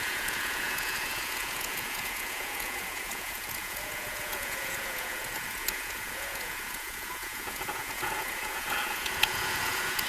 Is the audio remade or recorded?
remade